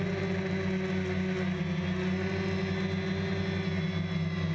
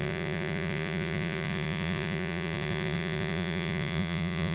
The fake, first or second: second